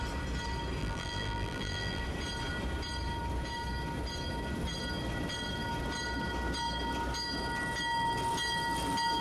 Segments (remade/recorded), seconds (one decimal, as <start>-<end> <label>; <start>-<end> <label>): 0.0-0.8 recorded; 0.8-2.0 remade; 2.0-9.2 recorded

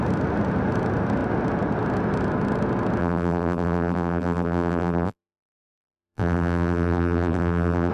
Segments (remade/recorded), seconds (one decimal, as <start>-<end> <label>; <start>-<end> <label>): 0.0-3.0 recorded; 3.0-7.9 remade